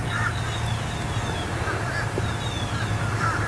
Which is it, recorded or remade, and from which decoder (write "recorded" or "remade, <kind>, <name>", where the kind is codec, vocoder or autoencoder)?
recorded